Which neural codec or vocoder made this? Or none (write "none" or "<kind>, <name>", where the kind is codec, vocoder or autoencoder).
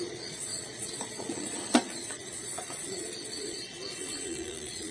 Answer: vocoder, Vocos